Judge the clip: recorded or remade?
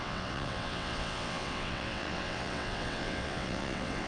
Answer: remade